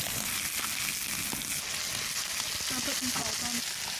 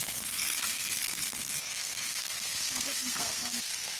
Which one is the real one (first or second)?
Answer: first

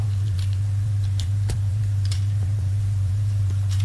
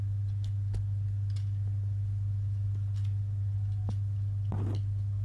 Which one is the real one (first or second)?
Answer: second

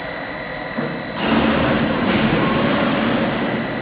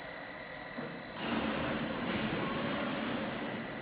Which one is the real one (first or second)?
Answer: first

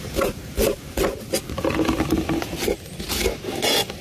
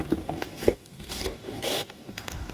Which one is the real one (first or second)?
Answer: first